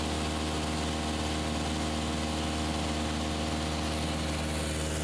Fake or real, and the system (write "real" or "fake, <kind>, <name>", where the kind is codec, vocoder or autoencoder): real